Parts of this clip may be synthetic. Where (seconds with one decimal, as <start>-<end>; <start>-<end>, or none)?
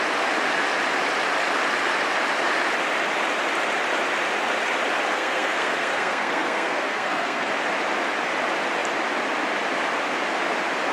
5.1-7.5